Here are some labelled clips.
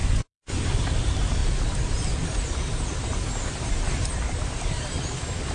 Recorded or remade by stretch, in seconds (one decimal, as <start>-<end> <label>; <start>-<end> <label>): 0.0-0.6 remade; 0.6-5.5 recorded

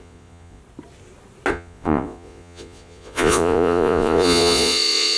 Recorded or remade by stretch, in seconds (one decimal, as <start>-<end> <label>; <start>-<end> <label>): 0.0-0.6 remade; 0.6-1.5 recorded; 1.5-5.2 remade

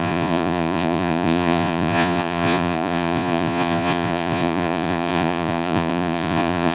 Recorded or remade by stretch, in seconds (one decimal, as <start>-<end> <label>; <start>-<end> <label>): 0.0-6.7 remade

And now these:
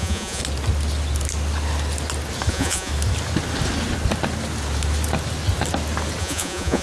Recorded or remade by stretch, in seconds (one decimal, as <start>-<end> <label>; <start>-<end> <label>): 0.0-0.4 remade; 0.4-2.5 recorded; 2.5-2.9 remade; 2.9-6.2 recorded; 6.2-6.8 remade

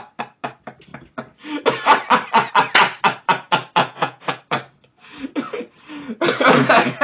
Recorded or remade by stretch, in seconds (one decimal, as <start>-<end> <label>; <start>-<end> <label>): 0.0-3.8 recorded; 3.8-4.4 remade; 4.4-7.0 recorded